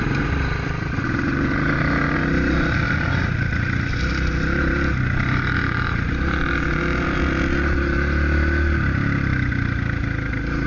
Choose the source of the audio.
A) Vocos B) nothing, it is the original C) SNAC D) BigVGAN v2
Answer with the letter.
B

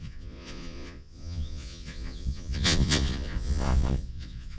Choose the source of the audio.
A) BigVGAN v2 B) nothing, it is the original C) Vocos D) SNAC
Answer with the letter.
C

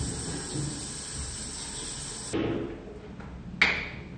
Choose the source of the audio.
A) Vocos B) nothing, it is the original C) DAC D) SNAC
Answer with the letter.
B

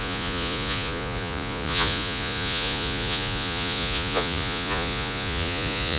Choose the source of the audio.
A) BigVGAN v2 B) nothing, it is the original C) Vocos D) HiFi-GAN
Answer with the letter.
C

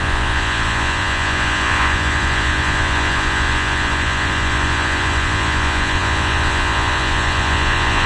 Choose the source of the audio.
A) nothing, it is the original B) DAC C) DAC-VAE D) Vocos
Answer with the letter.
D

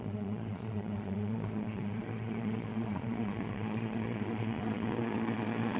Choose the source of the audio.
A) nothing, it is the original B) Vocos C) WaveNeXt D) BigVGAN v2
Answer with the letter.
B